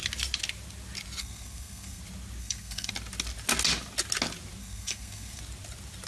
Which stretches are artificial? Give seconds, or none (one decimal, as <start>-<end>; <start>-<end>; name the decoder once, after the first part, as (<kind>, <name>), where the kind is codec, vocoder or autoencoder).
1.2-2.0 (codec, SNAC); 2.4-2.9; 4.6-5.4